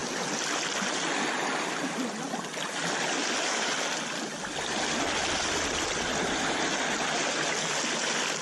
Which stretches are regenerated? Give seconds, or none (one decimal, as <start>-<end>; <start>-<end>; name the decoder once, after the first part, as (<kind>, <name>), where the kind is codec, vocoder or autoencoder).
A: none